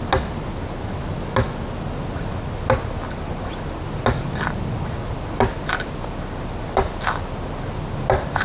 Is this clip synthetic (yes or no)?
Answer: no